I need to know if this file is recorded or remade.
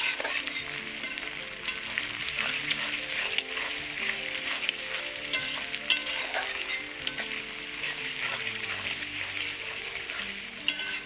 recorded